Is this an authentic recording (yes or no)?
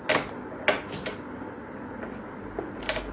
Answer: yes